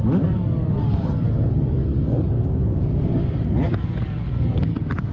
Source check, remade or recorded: remade